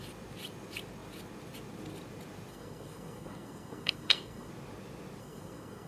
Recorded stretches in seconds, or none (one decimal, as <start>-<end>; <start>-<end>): 0.0-2.5; 4.5-5.2